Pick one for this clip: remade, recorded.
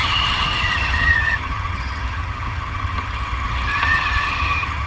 remade